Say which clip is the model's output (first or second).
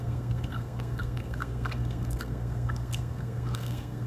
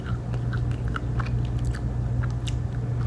first